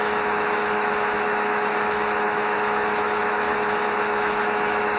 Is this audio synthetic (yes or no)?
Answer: yes